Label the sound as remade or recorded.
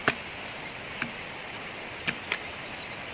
recorded